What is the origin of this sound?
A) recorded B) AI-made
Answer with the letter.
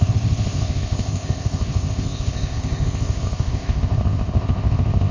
B